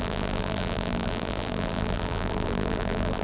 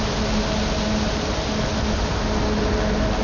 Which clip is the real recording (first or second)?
second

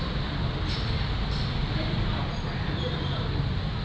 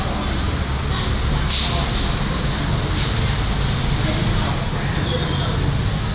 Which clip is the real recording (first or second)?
second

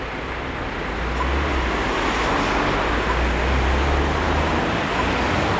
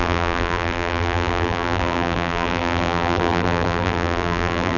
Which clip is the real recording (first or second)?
first